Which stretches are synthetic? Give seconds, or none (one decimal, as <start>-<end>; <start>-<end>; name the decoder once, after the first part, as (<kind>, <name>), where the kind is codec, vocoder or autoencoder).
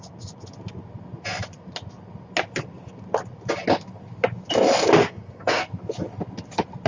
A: 5.0-5.6 (codec, SNAC)